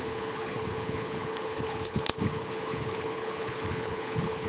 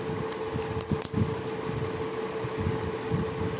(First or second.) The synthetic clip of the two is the first